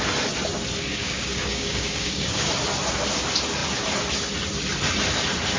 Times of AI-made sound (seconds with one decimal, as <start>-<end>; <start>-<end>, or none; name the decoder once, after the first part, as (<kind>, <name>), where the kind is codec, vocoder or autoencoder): 0.9-2.5 (codec, DAC)